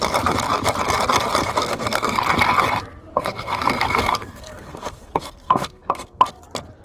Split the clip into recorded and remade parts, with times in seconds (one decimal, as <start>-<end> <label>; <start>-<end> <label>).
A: 0.0-1.6 recorded; 1.6-2.2 remade; 2.2-3.1 recorded; 3.1-6.2 remade; 6.2-6.8 recorded